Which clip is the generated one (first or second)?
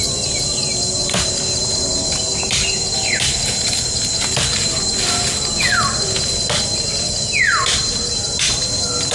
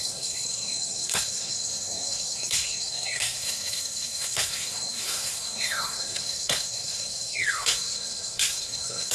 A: second